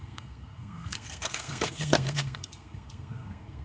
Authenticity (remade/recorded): remade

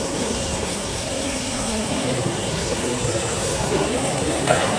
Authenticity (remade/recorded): remade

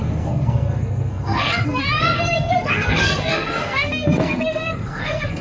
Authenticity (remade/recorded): remade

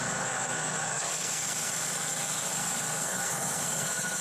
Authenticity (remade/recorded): remade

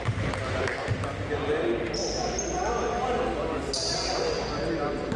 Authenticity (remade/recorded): recorded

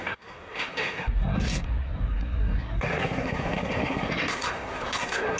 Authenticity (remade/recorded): remade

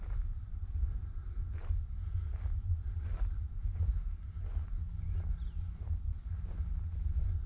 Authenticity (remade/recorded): recorded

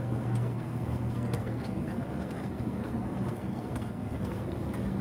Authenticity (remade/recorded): remade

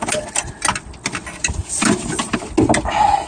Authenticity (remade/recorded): recorded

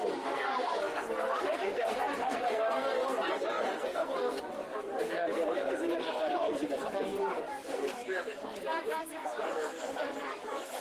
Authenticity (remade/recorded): remade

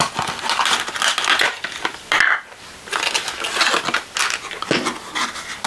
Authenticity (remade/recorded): recorded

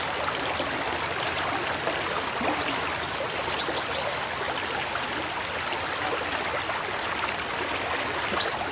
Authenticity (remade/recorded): recorded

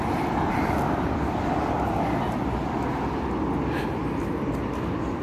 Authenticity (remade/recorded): recorded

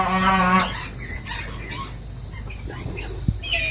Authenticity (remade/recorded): recorded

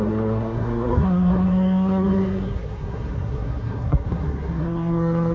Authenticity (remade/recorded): remade